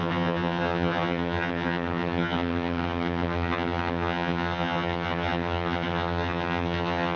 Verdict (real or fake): fake